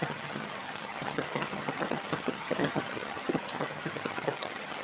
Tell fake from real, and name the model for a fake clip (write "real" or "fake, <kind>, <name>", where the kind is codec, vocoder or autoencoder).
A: fake, vocoder, HiFi-GAN